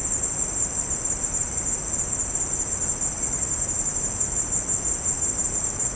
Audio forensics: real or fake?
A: real